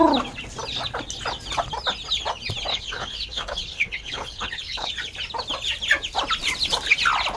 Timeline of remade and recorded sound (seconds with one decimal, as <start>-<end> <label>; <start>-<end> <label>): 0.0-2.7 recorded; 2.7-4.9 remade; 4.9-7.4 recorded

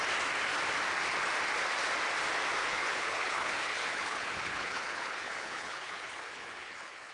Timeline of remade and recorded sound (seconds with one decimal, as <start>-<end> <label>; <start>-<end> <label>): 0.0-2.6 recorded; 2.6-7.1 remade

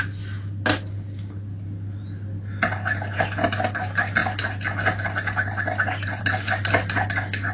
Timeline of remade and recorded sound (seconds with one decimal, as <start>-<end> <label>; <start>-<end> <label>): 0.0-7.5 recorded